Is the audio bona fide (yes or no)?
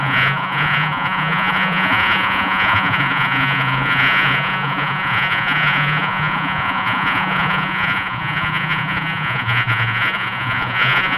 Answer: no